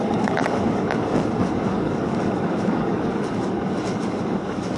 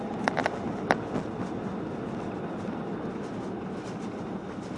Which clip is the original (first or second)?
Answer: second